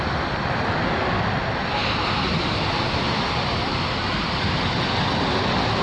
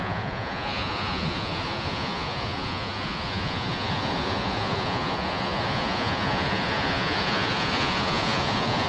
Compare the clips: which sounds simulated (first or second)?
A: second